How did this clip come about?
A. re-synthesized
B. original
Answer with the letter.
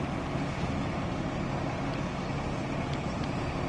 B